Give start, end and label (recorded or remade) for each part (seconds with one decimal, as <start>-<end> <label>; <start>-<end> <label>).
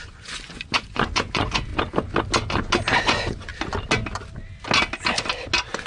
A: 0.0-1.7 remade; 1.7-3.0 recorded; 3.0-3.5 remade; 3.5-5.9 recorded